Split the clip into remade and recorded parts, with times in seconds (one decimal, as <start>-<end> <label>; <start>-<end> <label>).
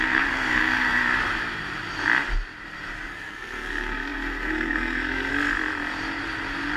0.0-1.0 remade; 1.0-3.0 recorded; 3.0-5.3 remade; 5.3-6.8 recorded